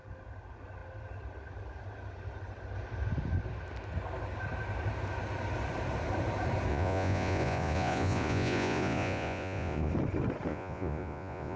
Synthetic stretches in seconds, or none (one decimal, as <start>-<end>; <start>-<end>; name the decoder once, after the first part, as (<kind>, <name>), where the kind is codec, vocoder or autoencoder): 6.7-9.9 (vocoder, Vocos); 10.5-11.6